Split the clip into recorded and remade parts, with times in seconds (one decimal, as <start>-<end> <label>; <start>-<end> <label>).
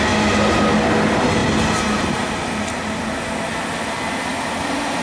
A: 0.0-1.4 recorded; 1.4-3.2 remade; 3.2-5.0 recorded